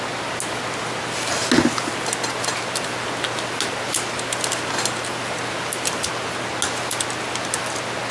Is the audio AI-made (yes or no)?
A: no